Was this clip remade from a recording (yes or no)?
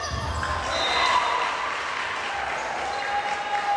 no